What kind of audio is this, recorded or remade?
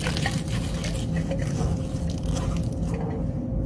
recorded